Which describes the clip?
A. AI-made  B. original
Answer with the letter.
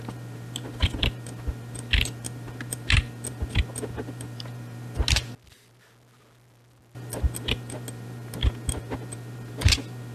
B